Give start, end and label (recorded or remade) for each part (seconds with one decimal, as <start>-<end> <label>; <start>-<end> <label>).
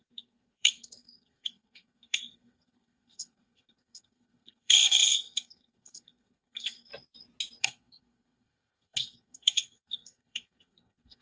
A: 0.0-6.9 remade; 6.9-7.6 recorded; 7.6-11.2 remade